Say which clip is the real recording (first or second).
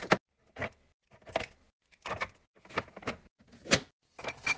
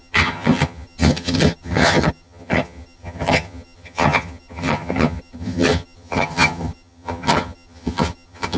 first